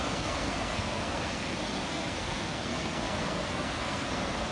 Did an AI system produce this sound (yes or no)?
yes